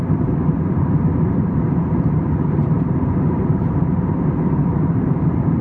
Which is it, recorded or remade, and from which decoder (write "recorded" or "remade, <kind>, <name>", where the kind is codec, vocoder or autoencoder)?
remade, vocoder, BigVGAN v2